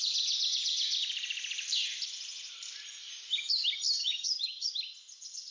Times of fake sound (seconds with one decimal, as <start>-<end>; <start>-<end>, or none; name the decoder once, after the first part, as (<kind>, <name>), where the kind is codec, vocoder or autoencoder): 4.0-4.7 (vocoder, HiFi-GAN)